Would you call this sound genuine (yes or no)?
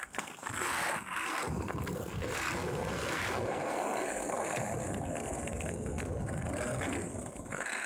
no